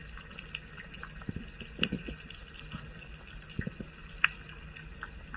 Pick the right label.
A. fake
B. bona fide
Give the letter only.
B